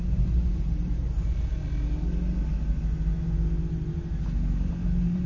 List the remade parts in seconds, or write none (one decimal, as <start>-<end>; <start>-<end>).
0.0-1.5; 4.7-5.3